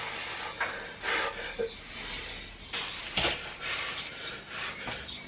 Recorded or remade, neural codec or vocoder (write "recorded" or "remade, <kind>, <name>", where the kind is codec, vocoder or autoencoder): recorded